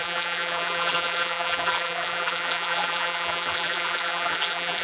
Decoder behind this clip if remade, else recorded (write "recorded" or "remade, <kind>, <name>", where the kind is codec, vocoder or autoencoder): remade, vocoder, BigVGAN v2